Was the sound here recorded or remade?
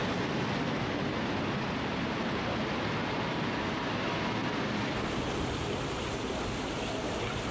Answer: recorded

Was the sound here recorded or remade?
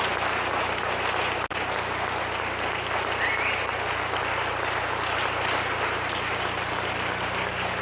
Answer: recorded